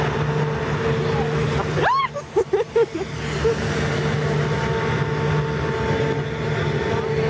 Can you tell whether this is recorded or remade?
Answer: recorded